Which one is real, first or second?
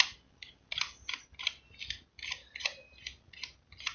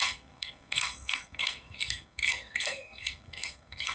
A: first